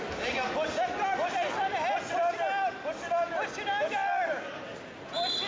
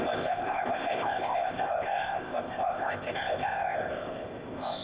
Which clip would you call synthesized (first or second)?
second